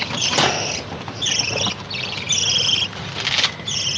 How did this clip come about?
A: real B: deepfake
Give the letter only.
A